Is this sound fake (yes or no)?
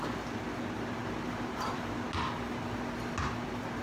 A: no